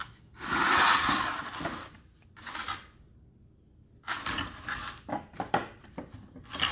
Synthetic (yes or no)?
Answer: no